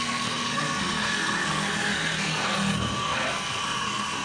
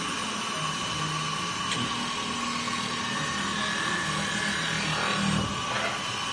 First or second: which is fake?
first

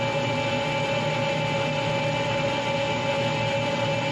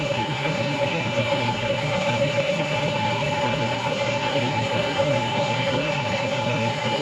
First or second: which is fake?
second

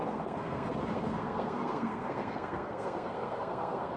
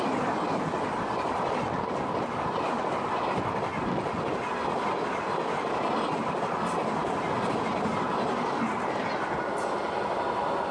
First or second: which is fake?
first